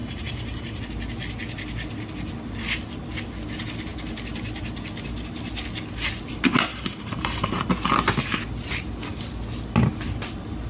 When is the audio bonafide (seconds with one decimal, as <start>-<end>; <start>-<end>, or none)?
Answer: 0.8-6.7; 7.7-10.7